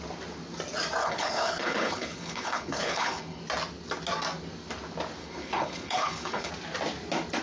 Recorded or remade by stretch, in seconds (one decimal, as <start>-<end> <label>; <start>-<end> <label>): 0.0-1.0 recorded; 1.0-3.4 remade; 3.4-5.2 recorded; 5.2-6.5 remade; 6.5-7.4 recorded